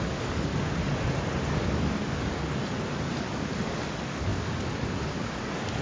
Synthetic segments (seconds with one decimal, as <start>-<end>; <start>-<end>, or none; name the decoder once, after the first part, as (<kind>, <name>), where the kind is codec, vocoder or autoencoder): 0.0-0.5 (codec, DAC); 1.5-2.6; 3.1-5.8

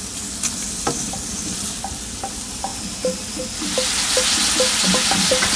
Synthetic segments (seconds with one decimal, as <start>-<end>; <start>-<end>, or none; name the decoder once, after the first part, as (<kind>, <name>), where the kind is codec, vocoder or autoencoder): none

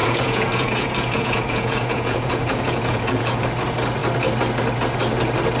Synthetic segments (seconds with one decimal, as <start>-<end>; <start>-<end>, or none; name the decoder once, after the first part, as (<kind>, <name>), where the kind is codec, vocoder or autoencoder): 0.0-3.4 (vocoder, Vocos)

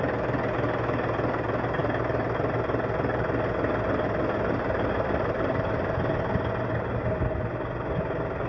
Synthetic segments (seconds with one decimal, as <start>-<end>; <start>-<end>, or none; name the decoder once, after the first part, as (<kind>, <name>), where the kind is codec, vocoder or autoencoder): none

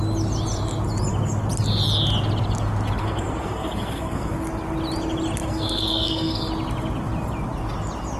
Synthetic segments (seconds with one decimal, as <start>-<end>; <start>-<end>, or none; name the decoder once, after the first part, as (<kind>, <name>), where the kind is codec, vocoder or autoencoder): 3.0-4.3 (codec, SNAC); 5.4-6.5